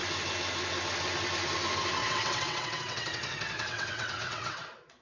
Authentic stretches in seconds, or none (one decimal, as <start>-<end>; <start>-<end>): 0.0-2.0